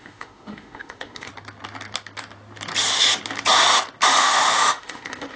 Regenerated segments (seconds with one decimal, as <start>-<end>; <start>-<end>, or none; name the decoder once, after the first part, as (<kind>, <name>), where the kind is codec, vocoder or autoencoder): 0.0-1.3 (autoencoder, DAC-VAE); 4.2-5.4